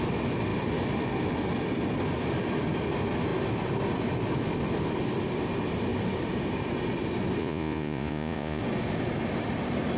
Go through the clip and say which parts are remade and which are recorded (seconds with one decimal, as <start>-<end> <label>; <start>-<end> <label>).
0.0-7.4 recorded; 7.4-8.6 remade; 8.6-10.0 recorded